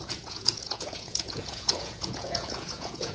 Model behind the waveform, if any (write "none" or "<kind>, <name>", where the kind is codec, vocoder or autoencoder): vocoder, Vocos